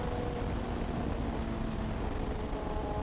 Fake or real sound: real